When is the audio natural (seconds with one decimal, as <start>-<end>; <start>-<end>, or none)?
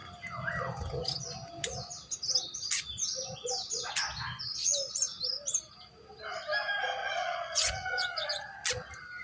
0.0-7.0; 8.5-9.2